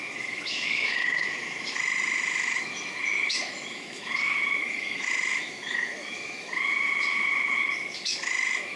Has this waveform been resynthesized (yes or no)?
yes